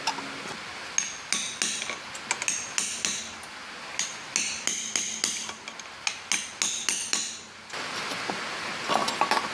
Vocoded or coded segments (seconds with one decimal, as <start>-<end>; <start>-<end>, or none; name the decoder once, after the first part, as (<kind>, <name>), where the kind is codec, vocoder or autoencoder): none